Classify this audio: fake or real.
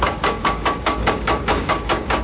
fake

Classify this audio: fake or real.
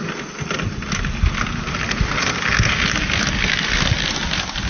real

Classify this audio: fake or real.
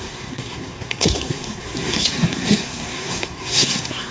fake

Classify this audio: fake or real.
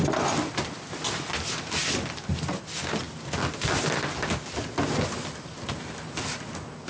real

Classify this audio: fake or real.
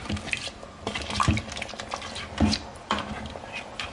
fake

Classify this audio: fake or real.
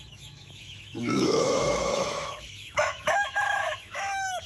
fake